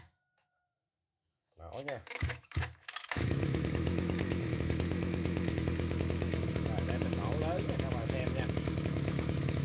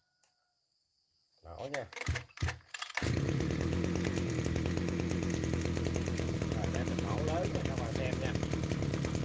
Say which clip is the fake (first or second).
first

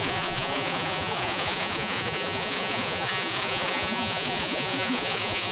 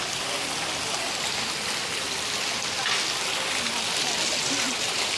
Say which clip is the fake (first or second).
first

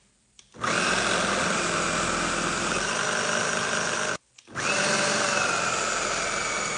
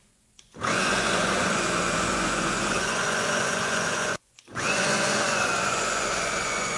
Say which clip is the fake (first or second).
second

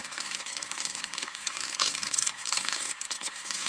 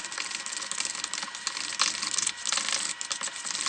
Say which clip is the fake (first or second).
first